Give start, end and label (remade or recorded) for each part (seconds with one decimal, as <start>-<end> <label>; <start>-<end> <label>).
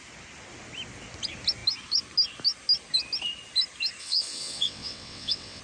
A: 0.0-4.0 recorded; 4.0-5.6 remade